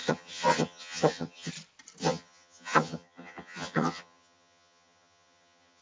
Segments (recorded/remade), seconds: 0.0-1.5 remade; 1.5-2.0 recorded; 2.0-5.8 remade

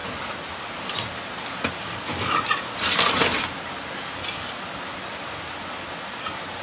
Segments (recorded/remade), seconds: 0.0-6.6 recorded

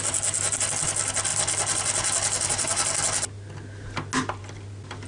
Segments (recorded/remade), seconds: 0.0-5.1 recorded

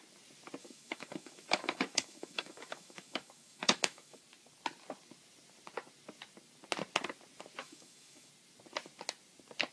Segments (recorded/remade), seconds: 0.0-0.6 recorded; 0.6-4.2 remade; 4.2-7.6 recorded; 7.6-8.3 remade; 8.3-9.7 recorded

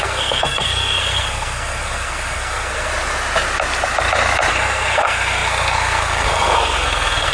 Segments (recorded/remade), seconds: 0.0-2.9 remade; 2.9-4.5 recorded; 4.5-7.3 remade

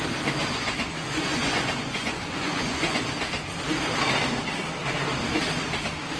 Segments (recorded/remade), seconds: 0.0-0.4 recorded; 0.4-3.0 remade; 3.0-6.2 recorded

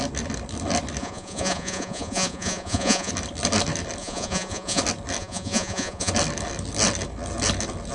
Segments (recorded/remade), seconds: 0.0-1.0 recorded; 1.0-3.1 remade; 3.1-4.0 recorded; 4.0-4.8 remade; 4.8-5.2 recorded; 5.2-6.1 remade; 6.1-7.9 recorded

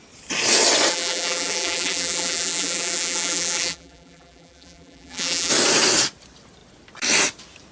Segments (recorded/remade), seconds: 0.0-0.9 recorded; 0.9-5.5 remade; 5.5-7.7 recorded